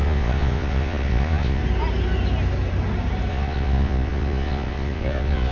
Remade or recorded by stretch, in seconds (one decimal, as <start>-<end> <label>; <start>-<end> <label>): 0.0-1.6 remade; 1.6-3.3 recorded; 3.3-5.5 remade

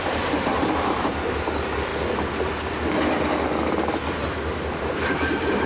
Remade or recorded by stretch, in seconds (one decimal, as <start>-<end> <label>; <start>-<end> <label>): 0.0-1.9 remade; 1.9-4.7 recorded; 4.7-5.7 remade

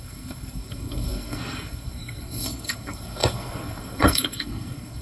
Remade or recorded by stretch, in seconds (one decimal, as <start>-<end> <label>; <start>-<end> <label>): 0.0-5.0 remade

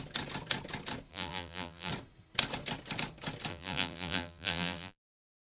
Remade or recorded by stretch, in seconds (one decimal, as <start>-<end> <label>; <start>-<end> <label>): 0.0-1.1 recorded; 1.1-1.9 remade; 1.9-3.5 recorded; 3.5-5.1 remade; 5.1-5.5 recorded

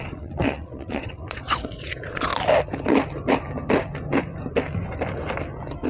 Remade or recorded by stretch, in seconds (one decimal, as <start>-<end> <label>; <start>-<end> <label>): 0.0-2.3 remade; 2.3-5.9 recorded

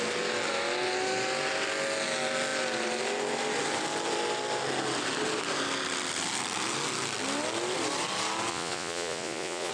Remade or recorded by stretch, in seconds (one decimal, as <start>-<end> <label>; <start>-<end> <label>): 0.0-8.5 recorded; 8.5-9.7 remade